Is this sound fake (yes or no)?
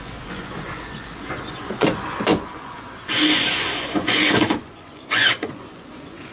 yes